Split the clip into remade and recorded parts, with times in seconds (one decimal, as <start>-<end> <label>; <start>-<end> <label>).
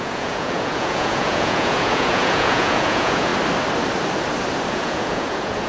0.0-3.3 remade; 3.3-4.7 recorded; 4.7-5.7 remade